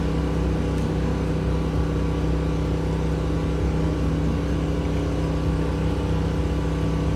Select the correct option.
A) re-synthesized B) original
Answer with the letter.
B